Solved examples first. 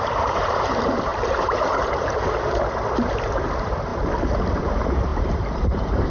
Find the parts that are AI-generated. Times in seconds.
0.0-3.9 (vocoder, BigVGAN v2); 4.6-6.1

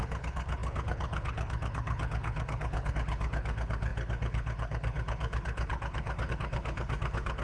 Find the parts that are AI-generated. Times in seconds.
0.0-7.4 (codec, HILCodec)

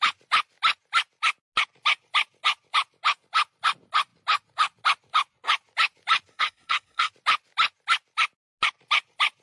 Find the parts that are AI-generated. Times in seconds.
6.3-7.1 (codec, SNAC)